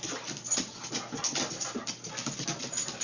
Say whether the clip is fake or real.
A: real